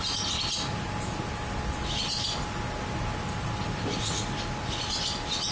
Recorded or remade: recorded